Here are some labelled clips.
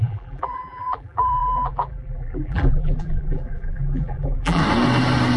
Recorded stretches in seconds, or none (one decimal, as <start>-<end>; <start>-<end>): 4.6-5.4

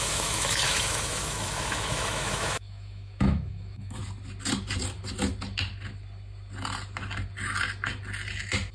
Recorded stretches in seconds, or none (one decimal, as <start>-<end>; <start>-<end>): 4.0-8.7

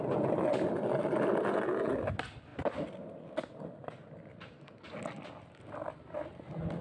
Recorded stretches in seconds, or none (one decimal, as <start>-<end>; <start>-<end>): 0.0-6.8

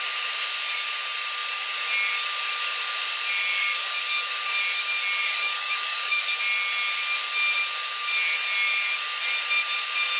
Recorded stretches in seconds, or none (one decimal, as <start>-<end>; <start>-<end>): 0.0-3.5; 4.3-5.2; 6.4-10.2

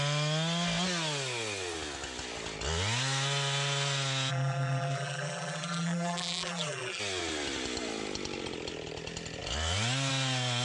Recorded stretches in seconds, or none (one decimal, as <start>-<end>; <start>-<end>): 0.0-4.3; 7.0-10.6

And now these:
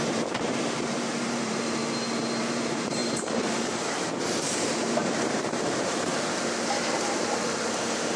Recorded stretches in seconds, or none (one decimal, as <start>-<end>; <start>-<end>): 1.8-2.4; 6.1-7.1

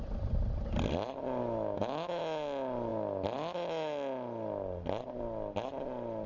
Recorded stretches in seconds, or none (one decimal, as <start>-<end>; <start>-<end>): 0.0-1.4; 2.2-6.3